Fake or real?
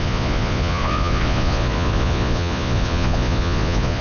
fake